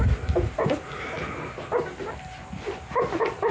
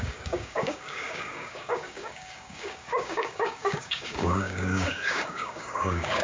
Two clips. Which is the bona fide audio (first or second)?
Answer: first